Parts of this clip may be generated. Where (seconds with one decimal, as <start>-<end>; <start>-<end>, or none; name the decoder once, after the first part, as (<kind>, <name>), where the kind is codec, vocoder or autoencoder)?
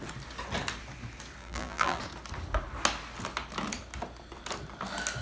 1.4-2.0 (vocoder, BigVGAN v2)